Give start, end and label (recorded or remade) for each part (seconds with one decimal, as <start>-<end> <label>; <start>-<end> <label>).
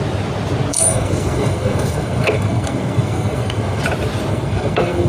0.0-0.7 recorded; 0.7-3.8 remade; 3.8-4.3 recorded; 4.3-5.1 remade